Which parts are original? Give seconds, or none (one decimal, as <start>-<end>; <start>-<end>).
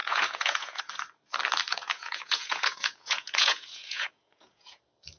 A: 0.8-1.7; 4.8-5.2